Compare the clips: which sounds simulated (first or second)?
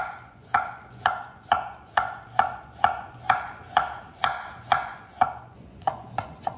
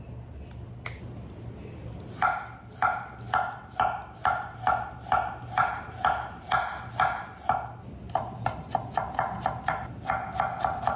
first